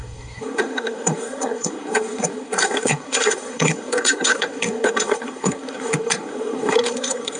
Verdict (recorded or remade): remade